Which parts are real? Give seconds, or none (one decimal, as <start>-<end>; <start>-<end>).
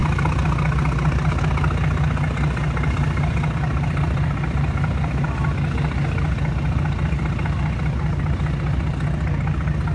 0.0-9.9